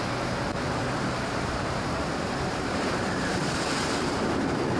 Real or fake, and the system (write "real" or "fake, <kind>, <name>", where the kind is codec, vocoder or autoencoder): fake, vocoder, BigVGAN v2